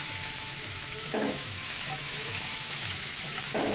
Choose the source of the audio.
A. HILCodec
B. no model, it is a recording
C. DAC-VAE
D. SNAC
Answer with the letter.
C